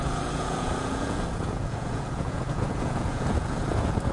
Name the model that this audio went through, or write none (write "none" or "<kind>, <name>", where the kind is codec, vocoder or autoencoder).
vocoder, Vocos